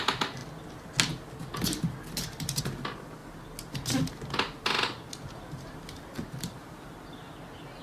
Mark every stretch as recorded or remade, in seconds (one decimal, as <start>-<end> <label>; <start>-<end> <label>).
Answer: 0.0-7.8 recorded

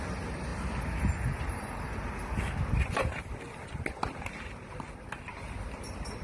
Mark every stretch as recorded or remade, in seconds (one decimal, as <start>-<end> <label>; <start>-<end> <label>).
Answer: 0.0-6.2 recorded

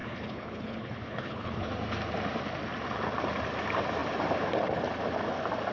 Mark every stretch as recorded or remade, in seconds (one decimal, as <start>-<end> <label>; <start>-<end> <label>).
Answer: 0.0-1.7 remade; 1.7-5.7 recorded

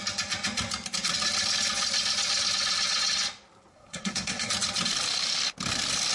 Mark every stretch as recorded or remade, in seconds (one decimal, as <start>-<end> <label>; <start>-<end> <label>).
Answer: 0.0-3.7 recorded; 3.7-4.5 remade; 4.5-6.1 recorded

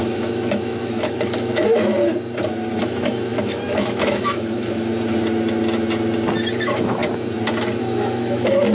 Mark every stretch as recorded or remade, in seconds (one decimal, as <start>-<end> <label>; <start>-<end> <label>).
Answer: 0.0-1.9 remade; 1.9-2.8 recorded; 2.8-4.9 remade; 4.9-6.6 recorded; 6.6-7.0 remade; 7.0-7.8 recorded; 7.8-8.7 remade

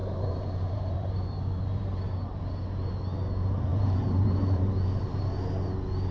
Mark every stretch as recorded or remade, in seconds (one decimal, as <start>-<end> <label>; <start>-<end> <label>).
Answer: 0.0-2.4 remade; 2.4-3.7 recorded; 3.7-5.2 remade; 5.2-6.1 recorded

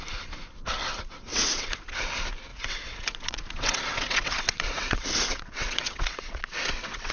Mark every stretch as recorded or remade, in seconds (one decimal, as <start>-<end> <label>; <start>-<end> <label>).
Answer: 0.0-1.3 recorded; 1.3-2.1 remade; 2.1-2.5 recorded; 2.5-7.1 remade